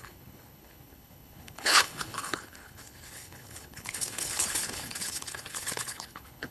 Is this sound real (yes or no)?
no